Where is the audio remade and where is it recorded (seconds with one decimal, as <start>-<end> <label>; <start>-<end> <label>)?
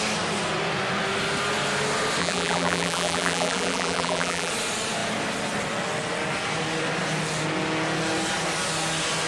0.0-2.2 recorded; 2.2-4.5 remade; 4.5-9.3 recorded